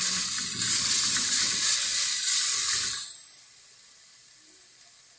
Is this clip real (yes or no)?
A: yes